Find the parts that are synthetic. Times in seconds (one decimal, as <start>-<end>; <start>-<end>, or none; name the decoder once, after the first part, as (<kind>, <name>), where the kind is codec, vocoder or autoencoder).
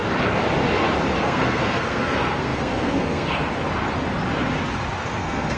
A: 1.2-3.5 (codec, SNAC); 5.1-5.6